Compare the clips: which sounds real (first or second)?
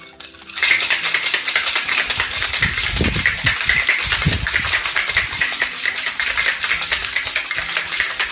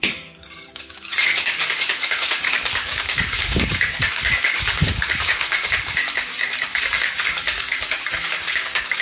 first